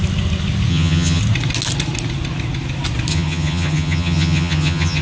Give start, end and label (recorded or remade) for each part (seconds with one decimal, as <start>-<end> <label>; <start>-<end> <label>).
0.0-0.7 recorded; 0.7-1.2 remade; 1.2-3.1 recorded; 3.1-5.0 remade